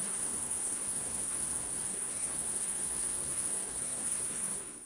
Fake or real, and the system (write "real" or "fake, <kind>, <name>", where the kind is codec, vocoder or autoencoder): fake, codec, SNAC